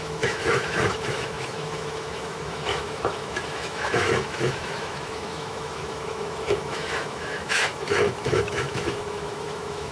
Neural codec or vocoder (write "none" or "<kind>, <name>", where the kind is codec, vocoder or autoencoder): autoencoder, DAC-VAE